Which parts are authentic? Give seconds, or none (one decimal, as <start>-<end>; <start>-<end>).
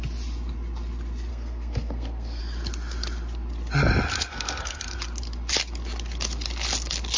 0.0-1.3; 2.4-4.3; 4.8-7.2